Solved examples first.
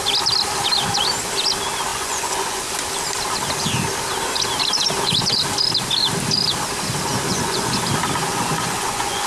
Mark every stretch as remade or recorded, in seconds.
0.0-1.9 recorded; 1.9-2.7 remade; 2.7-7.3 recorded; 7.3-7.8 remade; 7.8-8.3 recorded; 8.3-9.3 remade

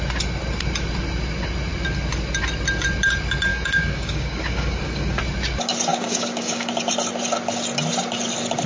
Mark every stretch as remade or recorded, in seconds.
0.0-3.5 recorded; 3.5-5.2 remade; 5.2-5.9 recorded; 5.9-6.7 remade; 6.7-8.7 recorded

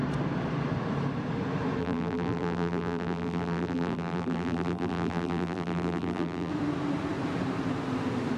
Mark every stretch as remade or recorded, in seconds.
0.0-1.8 recorded; 1.8-6.5 remade; 6.5-8.4 recorded

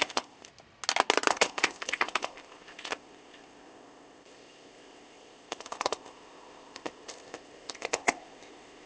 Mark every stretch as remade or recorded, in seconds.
0.0-0.5 remade; 0.5-1.3 recorded; 1.3-8.9 remade